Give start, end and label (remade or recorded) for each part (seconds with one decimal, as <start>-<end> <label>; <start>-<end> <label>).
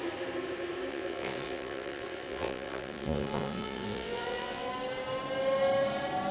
0.0-0.9 recorded; 0.9-4.7 remade; 4.7-6.3 recorded